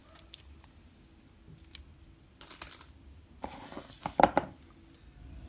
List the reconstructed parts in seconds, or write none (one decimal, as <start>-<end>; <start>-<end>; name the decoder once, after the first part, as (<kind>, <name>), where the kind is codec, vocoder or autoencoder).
none